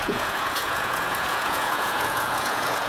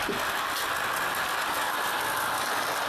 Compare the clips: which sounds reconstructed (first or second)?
first